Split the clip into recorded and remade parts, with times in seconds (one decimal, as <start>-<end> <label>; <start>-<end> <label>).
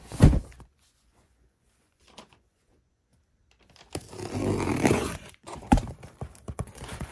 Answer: 0.0-3.1 remade; 3.1-4.9 recorded; 4.9-5.8 remade; 5.8-6.4 recorded; 6.4-7.1 remade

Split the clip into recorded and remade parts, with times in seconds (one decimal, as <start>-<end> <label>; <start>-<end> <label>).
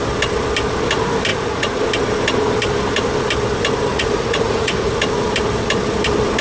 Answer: 0.0-1.3 recorded; 1.3-1.8 remade; 1.8-3.9 recorded; 3.9-4.9 remade; 4.9-6.4 recorded